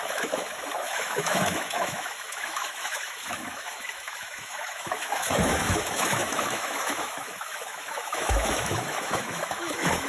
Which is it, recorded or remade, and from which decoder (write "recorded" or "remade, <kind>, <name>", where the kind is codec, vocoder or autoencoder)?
remade, autoencoder, DAC-VAE